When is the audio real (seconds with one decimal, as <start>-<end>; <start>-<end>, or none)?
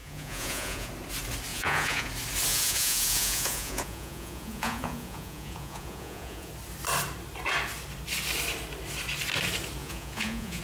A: 0.9-1.5; 2.1-2.5; 6.5-9.8